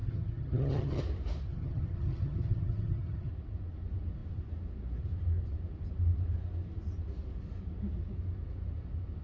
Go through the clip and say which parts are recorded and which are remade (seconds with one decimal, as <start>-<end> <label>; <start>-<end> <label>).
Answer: 0.0-1.0 remade; 1.0-1.5 recorded; 1.5-3.3 remade; 3.3-9.2 recorded